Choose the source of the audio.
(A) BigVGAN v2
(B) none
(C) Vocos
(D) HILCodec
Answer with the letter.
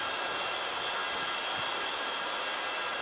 B